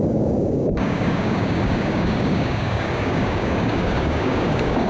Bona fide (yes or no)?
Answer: no